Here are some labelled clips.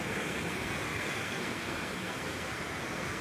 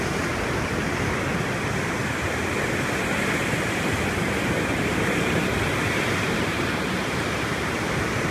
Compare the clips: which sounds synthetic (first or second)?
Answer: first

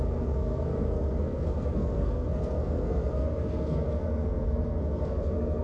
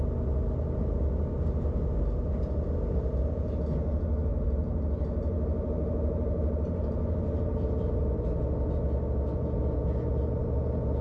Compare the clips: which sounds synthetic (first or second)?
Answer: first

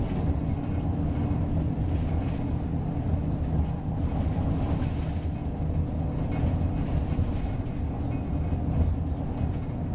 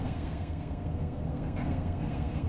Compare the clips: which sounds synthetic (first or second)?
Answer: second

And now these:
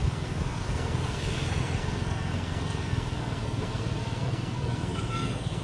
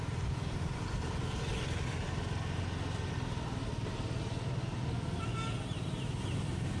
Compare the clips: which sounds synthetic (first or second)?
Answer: first